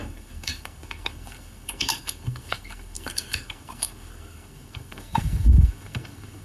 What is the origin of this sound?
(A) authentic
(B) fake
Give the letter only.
B